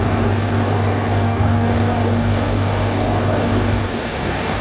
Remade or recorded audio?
remade